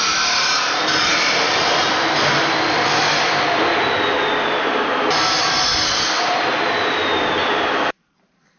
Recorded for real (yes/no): yes